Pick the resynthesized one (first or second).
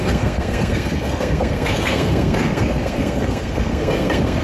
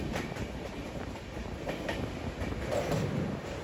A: first